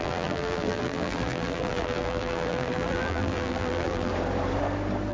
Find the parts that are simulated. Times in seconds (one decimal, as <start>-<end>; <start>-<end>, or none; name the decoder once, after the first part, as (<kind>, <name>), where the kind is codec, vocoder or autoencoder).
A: 0.0-4.1 (vocoder, BigVGAN v2)